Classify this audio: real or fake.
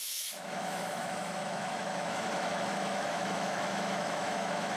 fake